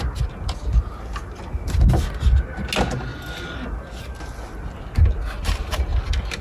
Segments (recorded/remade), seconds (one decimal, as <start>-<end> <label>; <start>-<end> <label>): 0.0-6.4 recorded